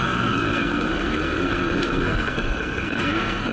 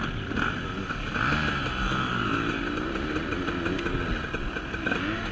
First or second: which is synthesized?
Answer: first